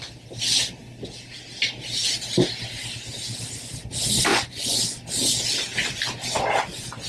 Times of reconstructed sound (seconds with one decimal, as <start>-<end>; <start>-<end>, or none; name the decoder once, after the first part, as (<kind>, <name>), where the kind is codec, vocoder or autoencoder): 4.3-4.8 (vocoder, Vocos)